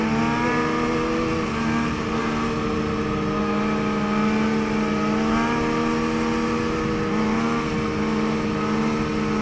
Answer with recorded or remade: recorded